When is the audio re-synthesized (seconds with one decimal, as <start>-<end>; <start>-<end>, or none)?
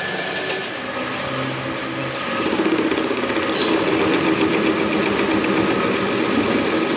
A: none